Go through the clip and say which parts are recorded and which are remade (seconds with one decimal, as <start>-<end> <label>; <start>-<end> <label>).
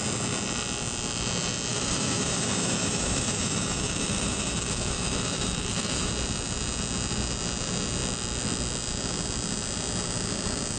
0.0-1.7 recorded; 1.7-6.1 remade; 6.1-10.8 recorded